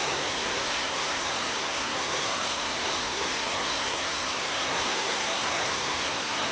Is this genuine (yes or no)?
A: no